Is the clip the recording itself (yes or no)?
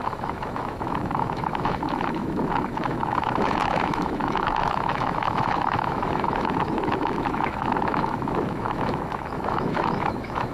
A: no